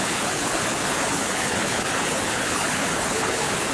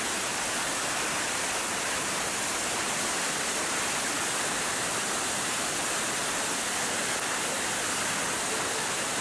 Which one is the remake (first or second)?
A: first